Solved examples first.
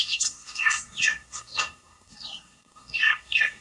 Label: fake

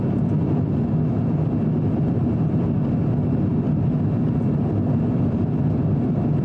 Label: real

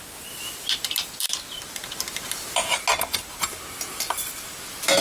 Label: real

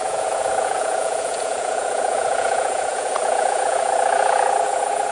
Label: fake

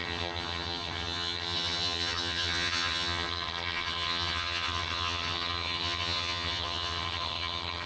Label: fake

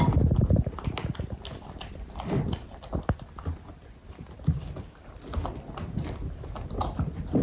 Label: real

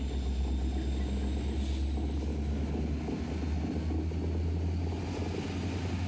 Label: real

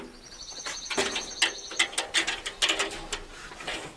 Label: real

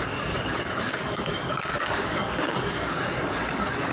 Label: fake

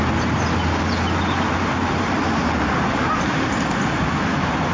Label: real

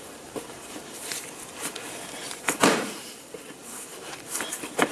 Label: fake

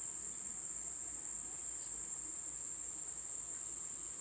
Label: real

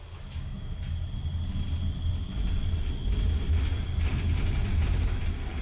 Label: real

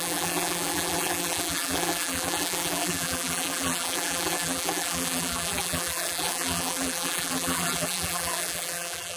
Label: fake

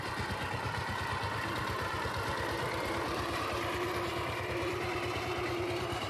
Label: fake